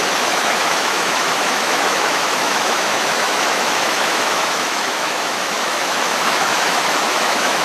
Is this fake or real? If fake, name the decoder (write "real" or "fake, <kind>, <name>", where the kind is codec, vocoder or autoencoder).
fake, autoencoder, DAC-VAE